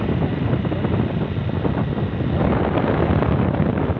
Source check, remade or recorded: recorded